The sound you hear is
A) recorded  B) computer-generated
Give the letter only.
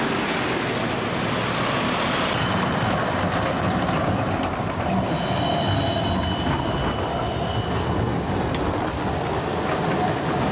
A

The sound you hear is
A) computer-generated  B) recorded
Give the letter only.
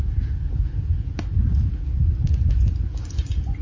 B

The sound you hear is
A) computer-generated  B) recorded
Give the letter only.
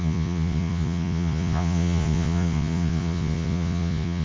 A